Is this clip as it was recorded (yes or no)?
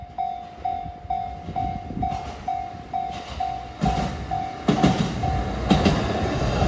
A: yes